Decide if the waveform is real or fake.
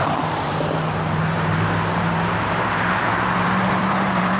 fake